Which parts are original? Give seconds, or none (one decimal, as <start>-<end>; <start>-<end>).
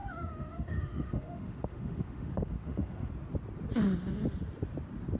3.1-5.2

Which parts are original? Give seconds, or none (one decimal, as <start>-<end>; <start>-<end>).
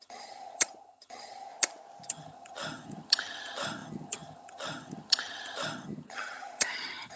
1.5-2.1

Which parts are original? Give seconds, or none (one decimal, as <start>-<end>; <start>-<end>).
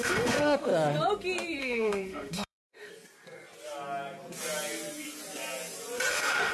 0.7-1.6; 2.9-6.1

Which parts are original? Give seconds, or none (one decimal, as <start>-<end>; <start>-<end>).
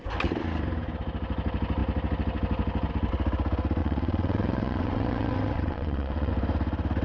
0.0-3.8; 6.3-7.0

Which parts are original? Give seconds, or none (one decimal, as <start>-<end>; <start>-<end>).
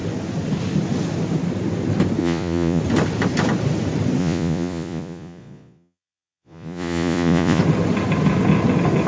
0.0-2.2; 2.8-4.2; 7.6-9.1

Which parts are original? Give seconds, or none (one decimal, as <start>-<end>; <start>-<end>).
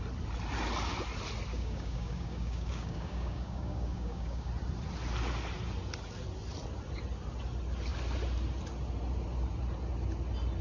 0.0-1.5; 4.5-10.6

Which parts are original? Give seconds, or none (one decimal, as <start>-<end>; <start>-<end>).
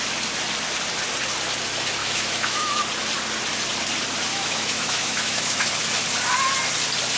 0.0-2.0; 2.8-4.3; 5.7-7.2